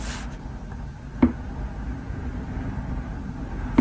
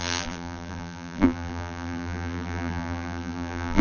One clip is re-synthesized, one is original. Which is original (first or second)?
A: first